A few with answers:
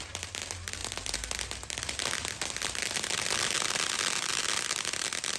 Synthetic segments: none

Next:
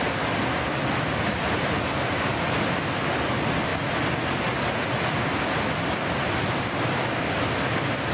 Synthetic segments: none

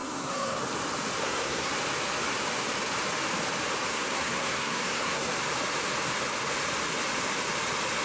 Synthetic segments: 0.0-0.6 (codec, SNAC); 1.2-1.7; 3.9-5.3